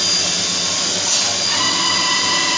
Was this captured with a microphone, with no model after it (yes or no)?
yes